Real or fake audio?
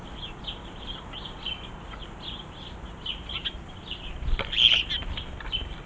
real